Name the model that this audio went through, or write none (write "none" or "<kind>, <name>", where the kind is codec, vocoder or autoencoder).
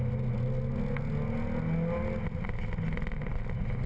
none